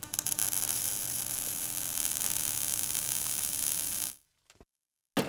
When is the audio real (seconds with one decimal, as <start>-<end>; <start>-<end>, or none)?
0.0-5.3

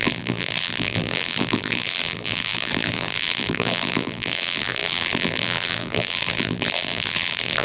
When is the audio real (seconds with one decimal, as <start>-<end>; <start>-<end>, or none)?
none

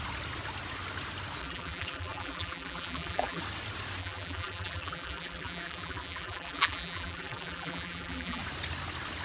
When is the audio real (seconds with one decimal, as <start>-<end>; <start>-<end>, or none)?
0.0-1.4; 3.4-4.0; 8.4-9.2